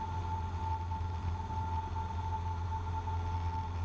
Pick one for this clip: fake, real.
real